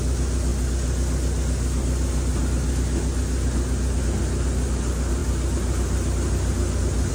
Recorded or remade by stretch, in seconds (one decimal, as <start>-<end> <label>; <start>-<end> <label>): 0.0-7.1 recorded